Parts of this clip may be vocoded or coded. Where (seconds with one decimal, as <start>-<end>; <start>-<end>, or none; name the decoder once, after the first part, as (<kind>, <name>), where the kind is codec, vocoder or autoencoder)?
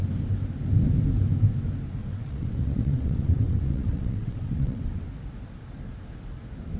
2.0-5.1 (vocoder, WaveNeXt)